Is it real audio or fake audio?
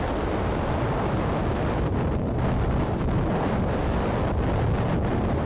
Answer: real